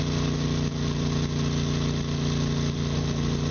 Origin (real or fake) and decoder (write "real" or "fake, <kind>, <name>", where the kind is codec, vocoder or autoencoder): real